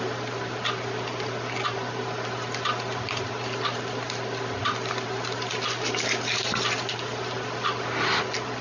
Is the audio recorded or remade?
recorded